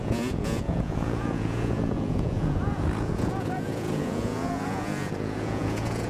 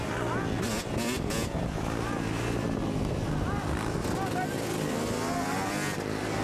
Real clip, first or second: second